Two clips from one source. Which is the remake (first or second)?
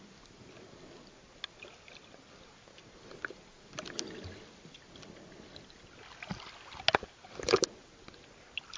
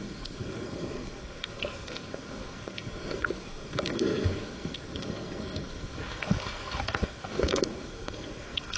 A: second